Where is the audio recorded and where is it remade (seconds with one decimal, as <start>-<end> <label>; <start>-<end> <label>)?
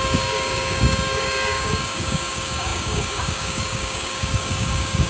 0.0-5.1 remade